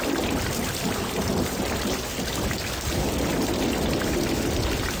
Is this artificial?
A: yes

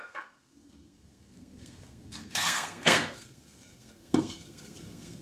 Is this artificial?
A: yes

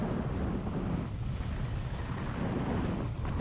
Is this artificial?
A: no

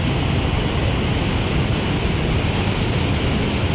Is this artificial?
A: no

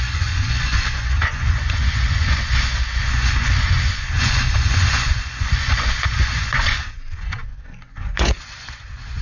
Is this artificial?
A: yes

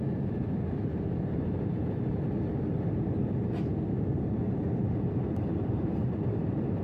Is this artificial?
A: yes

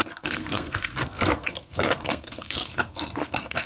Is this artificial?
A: yes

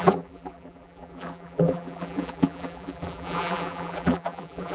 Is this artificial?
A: yes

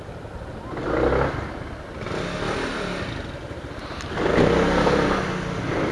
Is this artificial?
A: no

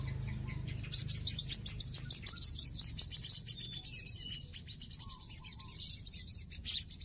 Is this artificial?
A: no